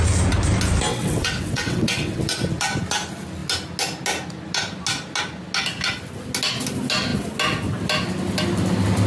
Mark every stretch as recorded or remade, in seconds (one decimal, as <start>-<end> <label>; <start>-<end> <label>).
0.0-0.9 recorded; 0.9-2.2 remade; 2.2-9.1 recorded